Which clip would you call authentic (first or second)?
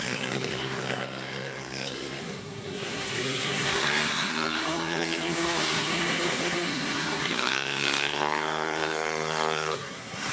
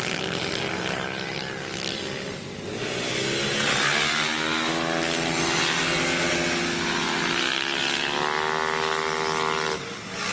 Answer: second